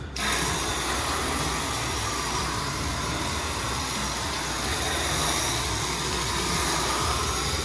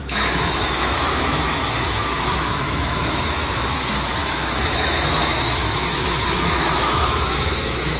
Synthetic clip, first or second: second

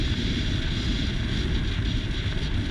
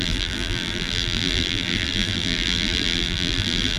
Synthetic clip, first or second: second